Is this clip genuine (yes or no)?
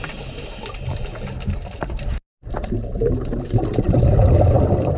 yes